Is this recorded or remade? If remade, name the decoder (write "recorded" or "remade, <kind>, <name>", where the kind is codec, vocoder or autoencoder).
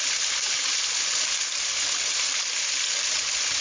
recorded